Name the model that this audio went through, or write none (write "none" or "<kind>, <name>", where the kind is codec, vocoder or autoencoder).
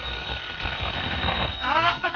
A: codec, SNAC